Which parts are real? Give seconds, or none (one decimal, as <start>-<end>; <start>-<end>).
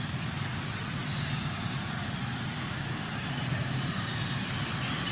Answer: 0.0-5.1